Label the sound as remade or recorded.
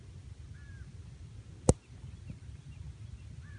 recorded